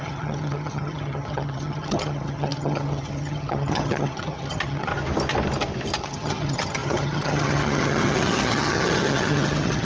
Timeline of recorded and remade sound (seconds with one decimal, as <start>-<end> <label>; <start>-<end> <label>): 0.0-4.9 remade; 4.9-6.0 recorded; 6.0-9.8 remade